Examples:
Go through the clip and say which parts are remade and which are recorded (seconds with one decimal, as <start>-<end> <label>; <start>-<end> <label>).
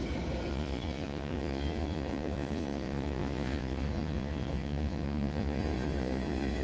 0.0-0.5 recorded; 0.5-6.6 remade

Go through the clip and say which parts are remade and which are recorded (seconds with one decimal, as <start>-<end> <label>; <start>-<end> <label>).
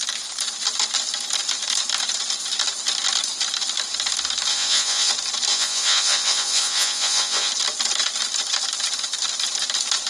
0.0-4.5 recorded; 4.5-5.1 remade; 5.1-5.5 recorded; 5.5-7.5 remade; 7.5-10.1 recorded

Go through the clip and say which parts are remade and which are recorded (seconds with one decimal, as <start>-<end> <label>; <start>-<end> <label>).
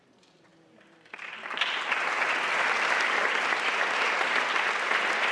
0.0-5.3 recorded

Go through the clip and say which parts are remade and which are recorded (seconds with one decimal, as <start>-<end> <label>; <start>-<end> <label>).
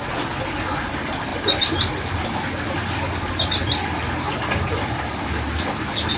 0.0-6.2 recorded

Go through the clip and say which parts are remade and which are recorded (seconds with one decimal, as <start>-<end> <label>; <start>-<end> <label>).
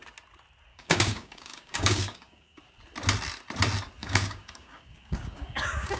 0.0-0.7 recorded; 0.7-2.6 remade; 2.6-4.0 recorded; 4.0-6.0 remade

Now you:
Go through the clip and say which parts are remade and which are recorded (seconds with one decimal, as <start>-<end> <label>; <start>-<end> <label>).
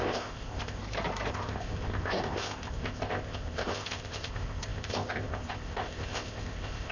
0.0-0.8 remade; 0.8-1.3 recorded; 1.3-6.9 remade